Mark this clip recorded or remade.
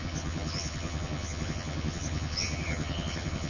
remade